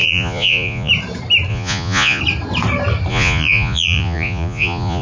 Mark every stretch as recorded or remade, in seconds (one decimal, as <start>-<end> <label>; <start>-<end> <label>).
0.0-0.9 remade; 0.9-1.5 recorded; 1.5-2.2 remade; 2.2-3.1 recorded; 3.1-5.0 remade